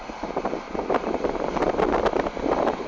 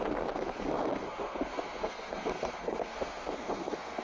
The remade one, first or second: second